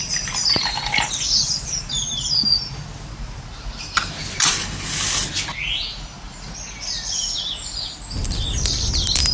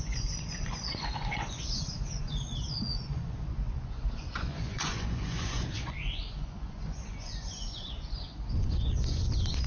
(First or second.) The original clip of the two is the first